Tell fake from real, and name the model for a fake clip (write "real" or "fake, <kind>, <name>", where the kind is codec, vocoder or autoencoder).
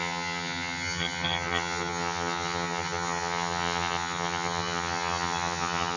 fake, vocoder, HiFi-GAN